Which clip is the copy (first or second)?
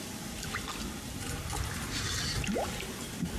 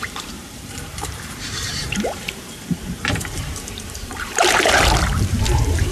second